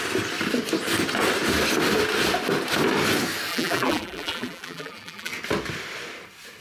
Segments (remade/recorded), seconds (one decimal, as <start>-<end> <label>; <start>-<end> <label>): 0.0-3.5 recorded; 3.5-5.3 remade; 5.3-6.6 recorded